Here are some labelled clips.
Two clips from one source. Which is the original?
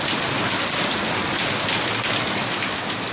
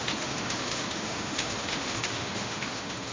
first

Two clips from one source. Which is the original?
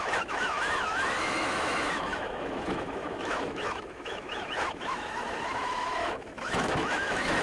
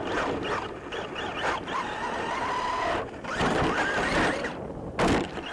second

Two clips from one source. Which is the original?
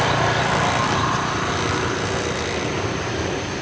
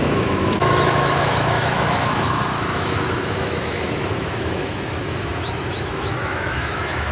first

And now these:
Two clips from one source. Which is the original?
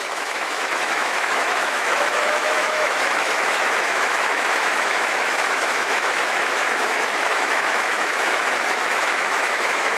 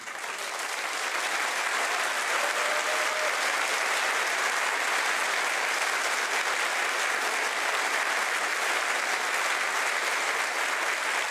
second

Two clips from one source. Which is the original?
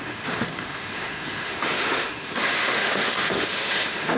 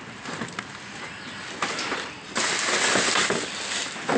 second